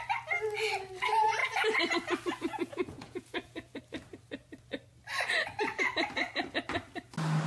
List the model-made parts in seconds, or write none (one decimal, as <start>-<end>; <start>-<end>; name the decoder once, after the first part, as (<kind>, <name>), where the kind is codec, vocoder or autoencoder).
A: 2.4-3.8 (vocoder, Vocos)

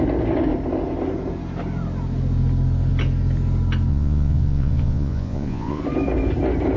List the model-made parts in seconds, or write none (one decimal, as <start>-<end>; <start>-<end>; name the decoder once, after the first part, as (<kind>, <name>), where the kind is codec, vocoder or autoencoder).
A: 3.9-5.8 (vocoder, Vocos)

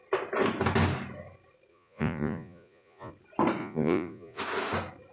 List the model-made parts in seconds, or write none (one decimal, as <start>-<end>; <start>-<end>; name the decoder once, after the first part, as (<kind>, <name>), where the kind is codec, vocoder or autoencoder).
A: 1.7-3.1 (vocoder, Vocos); 3.6-4.4

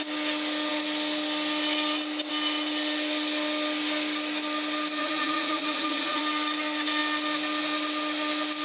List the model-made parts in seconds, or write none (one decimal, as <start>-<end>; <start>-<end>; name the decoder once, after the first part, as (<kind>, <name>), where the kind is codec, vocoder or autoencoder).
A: 5.0-6.2 (vocoder, Vocos)

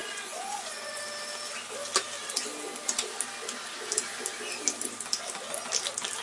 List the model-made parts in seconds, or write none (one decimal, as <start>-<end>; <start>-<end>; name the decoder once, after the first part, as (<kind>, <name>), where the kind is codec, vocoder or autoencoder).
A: 0.0-1.0 (vocoder, Vocos)

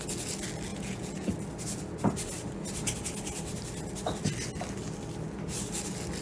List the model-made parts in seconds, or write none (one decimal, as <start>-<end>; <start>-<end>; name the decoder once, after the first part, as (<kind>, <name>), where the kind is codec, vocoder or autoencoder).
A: 0.7-1.3 (vocoder, Vocos)